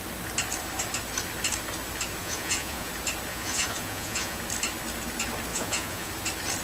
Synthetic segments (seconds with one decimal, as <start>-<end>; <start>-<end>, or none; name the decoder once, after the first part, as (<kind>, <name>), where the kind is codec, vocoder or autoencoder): 2.2-2.9 (vocoder, Vocos); 3.3-4.4; 5.5-6.1